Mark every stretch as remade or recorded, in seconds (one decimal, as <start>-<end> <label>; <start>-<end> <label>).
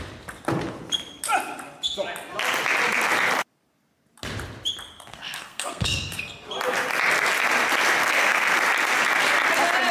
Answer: 0.0-5.1 recorded; 5.1-6.2 remade; 6.2-8.0 recorded; 8.0-8.6 remade; 8.6-9.9 recorded